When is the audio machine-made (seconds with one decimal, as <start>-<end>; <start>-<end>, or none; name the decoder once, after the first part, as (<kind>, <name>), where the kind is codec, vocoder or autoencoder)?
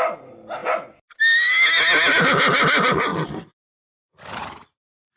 none